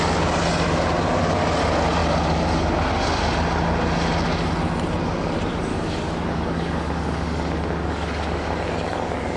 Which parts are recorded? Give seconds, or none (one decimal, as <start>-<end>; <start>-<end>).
0.0-5.7